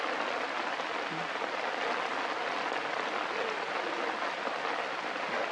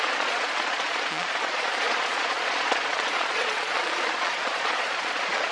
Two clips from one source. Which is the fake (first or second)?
second